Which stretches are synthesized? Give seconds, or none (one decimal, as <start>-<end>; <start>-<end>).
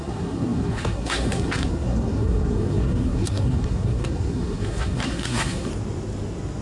0.0-5.7